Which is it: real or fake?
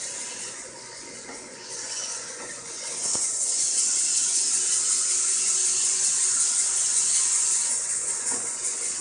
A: fake